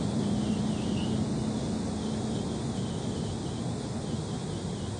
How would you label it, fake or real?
real